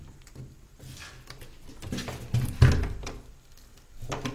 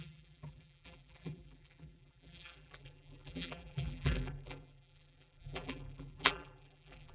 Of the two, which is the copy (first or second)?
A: second